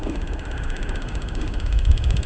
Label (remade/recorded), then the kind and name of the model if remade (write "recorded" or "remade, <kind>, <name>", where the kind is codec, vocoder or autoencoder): remade, autoencoder, DAC-VAE